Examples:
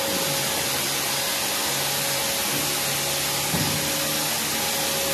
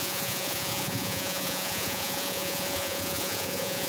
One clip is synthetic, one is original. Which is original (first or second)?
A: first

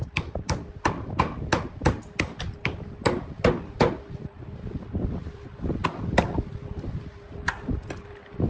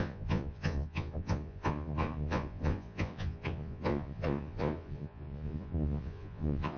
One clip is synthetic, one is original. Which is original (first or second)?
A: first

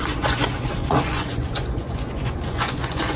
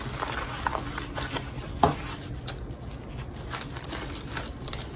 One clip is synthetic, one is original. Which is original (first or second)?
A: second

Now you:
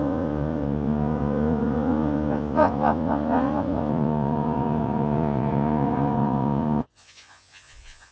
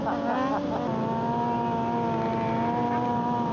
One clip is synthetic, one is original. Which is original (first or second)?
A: second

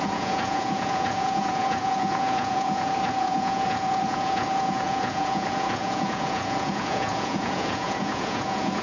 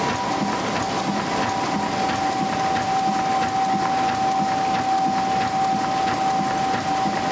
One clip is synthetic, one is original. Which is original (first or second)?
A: second